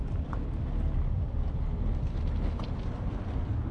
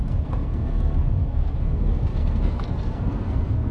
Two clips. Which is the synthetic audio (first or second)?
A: second